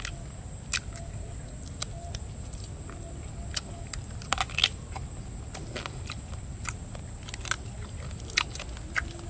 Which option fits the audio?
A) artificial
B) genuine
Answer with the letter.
B